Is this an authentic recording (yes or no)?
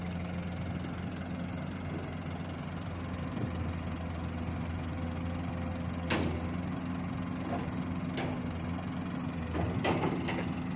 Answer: yes